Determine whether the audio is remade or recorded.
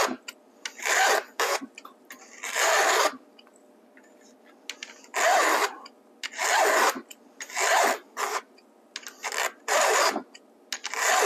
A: recorded